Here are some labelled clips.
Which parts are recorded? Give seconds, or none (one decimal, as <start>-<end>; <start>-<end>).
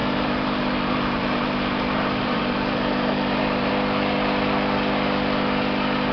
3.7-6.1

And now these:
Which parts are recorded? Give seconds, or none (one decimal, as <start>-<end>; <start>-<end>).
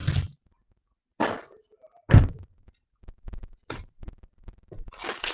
0.0-2.1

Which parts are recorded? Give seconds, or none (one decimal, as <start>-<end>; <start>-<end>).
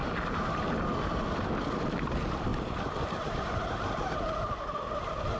0.0-2.5; 4.5-5.4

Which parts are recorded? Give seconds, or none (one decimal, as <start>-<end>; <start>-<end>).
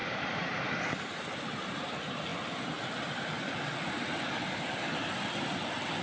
0.6-6.0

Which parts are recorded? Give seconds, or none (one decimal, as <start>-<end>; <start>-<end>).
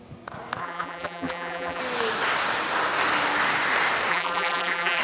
0.0-0.6; 1.8-4.1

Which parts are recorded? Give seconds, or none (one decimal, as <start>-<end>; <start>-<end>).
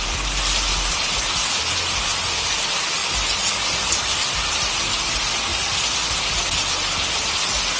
0.0-5.5; 6.2-7.8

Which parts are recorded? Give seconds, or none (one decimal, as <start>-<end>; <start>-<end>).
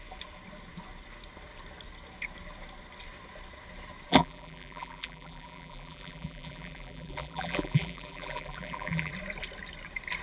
0.0-4.1; 9.1-10.2